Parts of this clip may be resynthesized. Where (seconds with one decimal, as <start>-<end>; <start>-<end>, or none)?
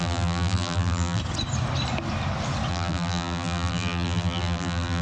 0.0-1.2; 2.7-5.0